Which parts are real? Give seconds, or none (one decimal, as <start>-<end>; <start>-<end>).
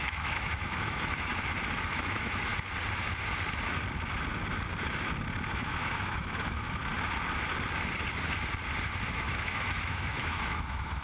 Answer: 1.3-1.9; 2.5-5.5; 6.8-9.1